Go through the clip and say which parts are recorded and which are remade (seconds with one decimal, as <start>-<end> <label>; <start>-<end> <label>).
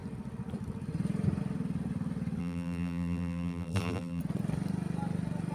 0.0-2.4 recorded; 2.4-4.2 remade; 4.2-5.5 recorded